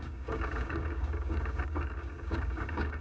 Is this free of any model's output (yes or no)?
no